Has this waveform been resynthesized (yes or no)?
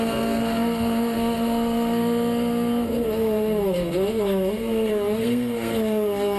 yes